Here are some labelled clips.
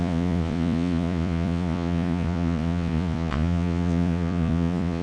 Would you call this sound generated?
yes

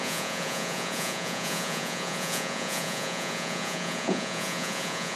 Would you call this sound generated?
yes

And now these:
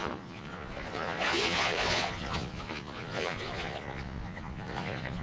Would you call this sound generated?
yes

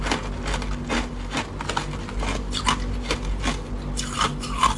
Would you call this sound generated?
no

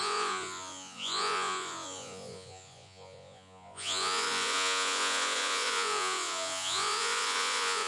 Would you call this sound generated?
yes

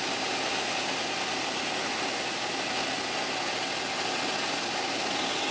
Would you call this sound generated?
no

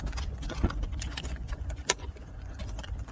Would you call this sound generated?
yes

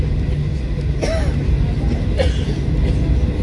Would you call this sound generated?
no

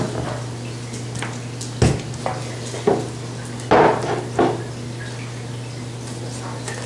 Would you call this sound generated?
no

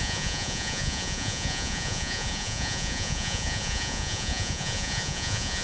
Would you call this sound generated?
yes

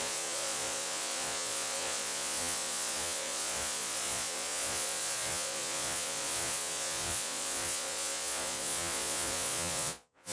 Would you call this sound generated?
yes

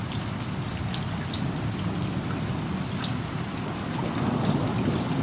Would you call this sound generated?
no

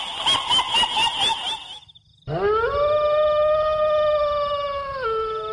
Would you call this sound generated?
no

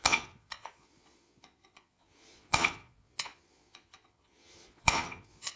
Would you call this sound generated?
yes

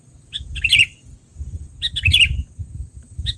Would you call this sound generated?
no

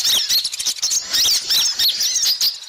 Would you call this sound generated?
no